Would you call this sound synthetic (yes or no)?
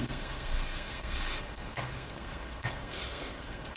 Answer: yes